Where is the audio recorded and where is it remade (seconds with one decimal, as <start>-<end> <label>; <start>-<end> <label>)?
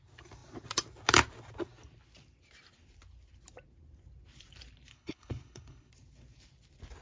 0.0-4.9 recorded; 4.9-5.9 remade; 5.9-7.0 recorded